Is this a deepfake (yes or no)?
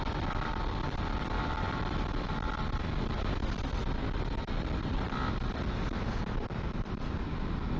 no